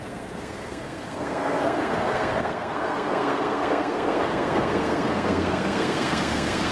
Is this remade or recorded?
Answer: remade